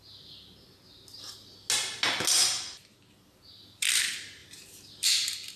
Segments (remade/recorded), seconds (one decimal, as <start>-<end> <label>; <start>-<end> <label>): 0.0-5.6 recorded